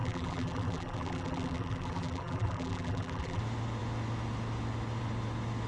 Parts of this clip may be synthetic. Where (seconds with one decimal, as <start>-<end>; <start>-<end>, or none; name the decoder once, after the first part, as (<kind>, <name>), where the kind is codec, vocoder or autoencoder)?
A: 0.0-3.4 (vocoder, BigVGAN v2)

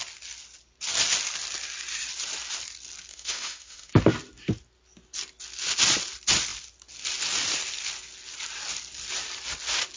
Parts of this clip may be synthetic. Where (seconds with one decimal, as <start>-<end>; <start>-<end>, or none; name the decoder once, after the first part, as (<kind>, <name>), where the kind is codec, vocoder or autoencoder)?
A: 3.1-3.9 (autoencoder, DAC-VAE)

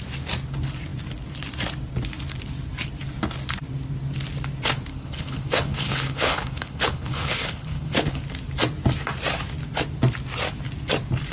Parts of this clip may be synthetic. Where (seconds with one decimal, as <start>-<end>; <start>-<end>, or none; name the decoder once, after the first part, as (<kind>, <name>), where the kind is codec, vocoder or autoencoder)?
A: 4.9-8.2 (codec, HILCodec)

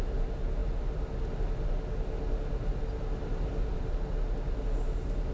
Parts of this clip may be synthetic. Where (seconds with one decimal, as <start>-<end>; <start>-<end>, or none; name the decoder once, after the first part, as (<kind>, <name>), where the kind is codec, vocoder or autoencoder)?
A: none

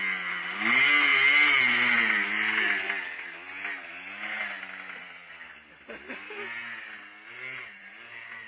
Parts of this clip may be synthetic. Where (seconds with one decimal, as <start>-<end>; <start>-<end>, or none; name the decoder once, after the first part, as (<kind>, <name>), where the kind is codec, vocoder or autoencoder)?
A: none

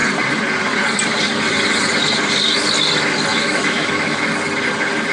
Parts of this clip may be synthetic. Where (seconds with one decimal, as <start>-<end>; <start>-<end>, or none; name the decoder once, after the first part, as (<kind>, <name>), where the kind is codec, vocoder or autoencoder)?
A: 3.3-4.2 (autoencoder, DAC-VAE)

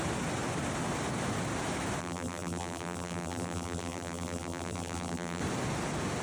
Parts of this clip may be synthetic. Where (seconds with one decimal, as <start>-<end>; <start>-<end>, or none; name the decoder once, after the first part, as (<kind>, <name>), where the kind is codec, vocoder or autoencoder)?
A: 2.0-5.4 (vocoder, BigVGAN v2)

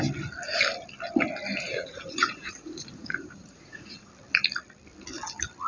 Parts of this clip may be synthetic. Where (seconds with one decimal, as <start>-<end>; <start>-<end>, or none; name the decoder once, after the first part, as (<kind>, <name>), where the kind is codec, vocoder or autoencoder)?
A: 1.7-4.1 (vocoder, Vocos)